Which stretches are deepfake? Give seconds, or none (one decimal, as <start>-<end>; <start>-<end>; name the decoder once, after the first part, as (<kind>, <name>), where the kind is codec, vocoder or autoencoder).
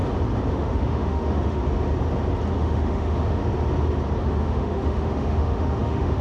0.5-1.6 (autoencoder, DAC-VAE); 2.5-3.4; 4.2-6.2